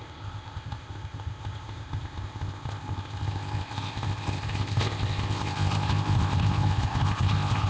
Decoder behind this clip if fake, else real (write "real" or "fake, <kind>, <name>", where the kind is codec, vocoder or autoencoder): fake, codec, ZipCodec